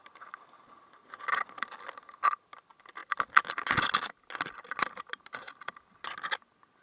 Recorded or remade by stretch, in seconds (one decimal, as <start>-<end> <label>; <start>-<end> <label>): 0.0-6.8 recorded